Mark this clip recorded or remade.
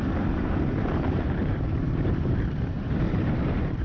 remade